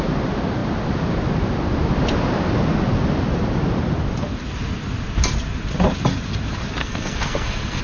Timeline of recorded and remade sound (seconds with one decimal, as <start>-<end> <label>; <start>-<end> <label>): 0.0-6.8 recorded; 6.8-7.8 remade